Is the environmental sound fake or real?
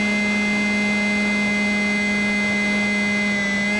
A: real